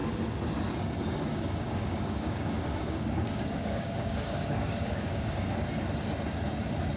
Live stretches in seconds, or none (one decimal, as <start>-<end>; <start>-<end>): 0.0-1.3; 5.5-7.0